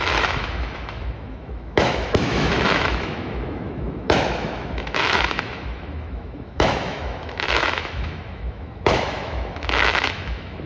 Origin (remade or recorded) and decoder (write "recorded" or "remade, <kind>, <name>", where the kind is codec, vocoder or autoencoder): remade, autoencoder, DAC-VAE